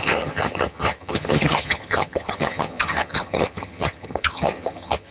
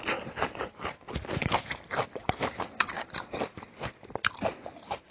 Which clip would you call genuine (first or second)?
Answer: second